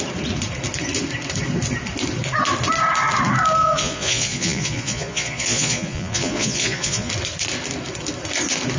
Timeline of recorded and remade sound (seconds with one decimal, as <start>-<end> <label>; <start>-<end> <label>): 0.0-3.6 recorded; 3.6-7.1 remade; 7.1-8.8 recorded